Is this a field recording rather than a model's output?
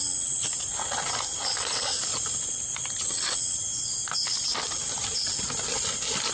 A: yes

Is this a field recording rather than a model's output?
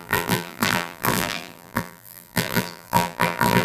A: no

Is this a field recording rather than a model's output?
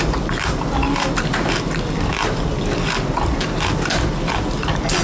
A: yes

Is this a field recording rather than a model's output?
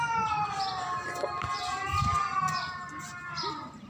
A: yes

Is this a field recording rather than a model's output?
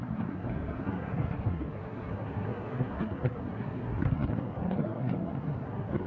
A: no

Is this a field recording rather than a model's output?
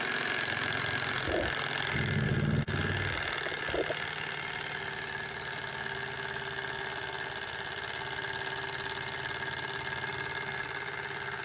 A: yes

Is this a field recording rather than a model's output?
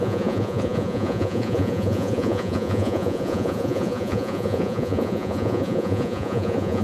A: no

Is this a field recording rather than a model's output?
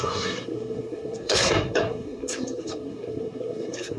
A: no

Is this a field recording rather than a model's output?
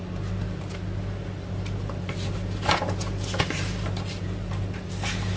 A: yes